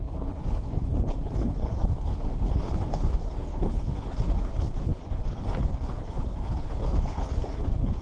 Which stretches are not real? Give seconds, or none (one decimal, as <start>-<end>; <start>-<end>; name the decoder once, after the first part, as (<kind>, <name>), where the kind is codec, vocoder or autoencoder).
0.0-8.0 (codec, HILCodec)